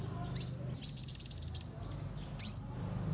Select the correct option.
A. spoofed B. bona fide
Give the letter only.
B